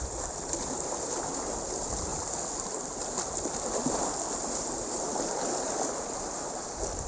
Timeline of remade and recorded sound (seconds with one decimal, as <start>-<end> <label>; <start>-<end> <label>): 0.0-7.1 recorded